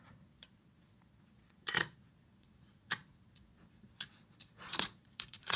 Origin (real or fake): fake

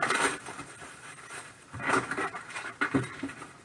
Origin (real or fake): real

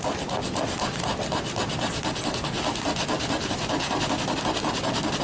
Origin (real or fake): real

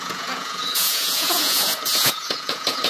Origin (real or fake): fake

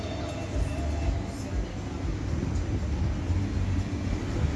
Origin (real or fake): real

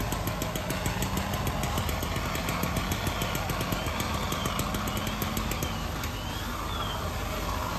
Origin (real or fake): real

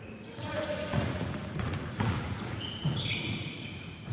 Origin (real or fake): fake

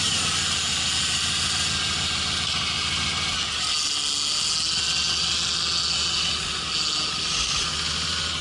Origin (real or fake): real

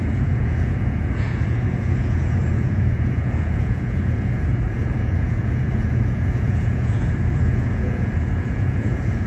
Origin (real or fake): fake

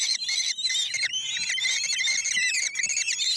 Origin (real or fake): real